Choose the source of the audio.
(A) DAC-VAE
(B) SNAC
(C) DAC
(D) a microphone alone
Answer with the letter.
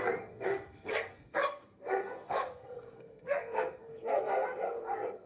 B